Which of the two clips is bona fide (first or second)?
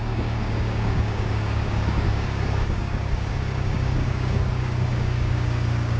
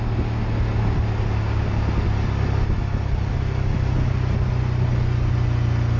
second